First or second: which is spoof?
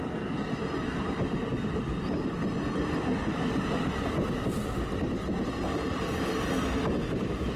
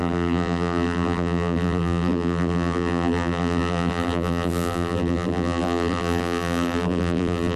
second